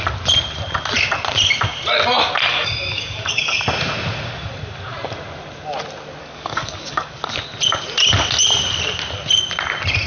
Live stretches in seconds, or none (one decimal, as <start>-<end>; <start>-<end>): 0.0-2.5; 3.6-6.2; 7.2-10.1